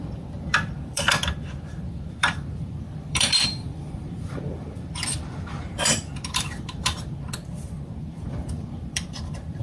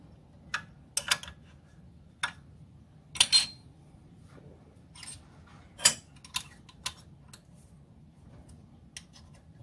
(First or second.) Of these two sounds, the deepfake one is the first